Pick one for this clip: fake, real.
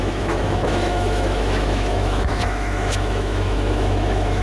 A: fake